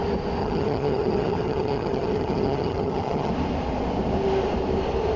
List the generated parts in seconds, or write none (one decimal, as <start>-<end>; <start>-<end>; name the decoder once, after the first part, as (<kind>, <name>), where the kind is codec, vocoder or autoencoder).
0.4-3.3 (vocoder, HiFi-GAN)